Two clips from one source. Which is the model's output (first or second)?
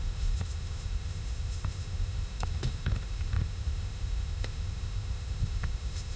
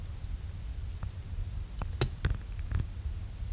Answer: first